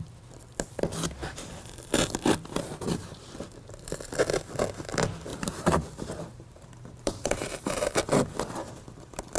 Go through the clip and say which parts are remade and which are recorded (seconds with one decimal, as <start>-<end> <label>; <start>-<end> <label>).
0.0-5.3 recorded; 5.3-8.0 remade; 8.0-9.4 recorded